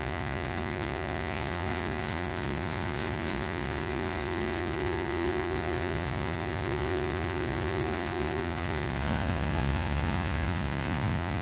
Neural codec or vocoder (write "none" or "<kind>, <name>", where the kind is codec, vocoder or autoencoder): vocoder, Vocos